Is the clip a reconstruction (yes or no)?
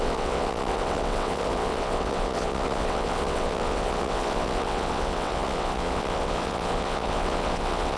yes